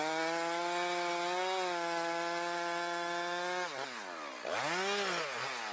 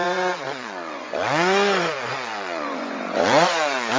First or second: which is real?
first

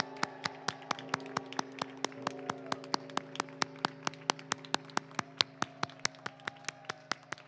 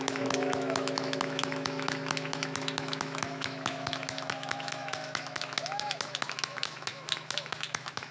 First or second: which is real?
first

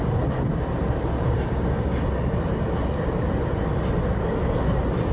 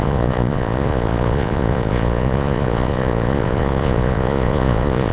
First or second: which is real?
first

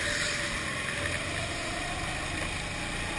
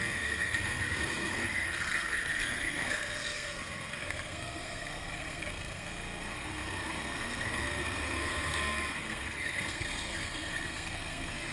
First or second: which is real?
first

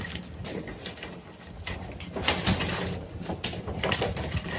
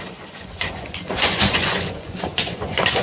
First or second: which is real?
first